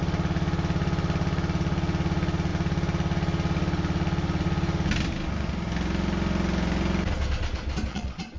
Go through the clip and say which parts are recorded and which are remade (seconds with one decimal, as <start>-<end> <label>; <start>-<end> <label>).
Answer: 0.0-7.9 recorded; 7.9-8.4 remade